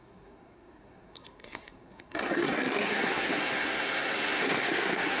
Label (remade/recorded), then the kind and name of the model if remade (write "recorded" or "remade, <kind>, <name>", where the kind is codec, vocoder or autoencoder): remade, codec, SNAC